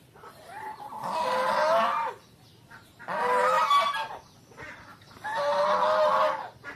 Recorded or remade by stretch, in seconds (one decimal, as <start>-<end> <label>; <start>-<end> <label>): 0.0-4.9 recorded; 4.9-5.6 remade; 5.6-6.8 recorded